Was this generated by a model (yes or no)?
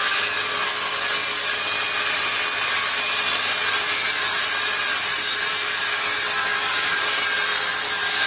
no